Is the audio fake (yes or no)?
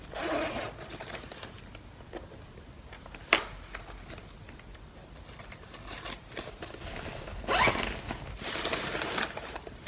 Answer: no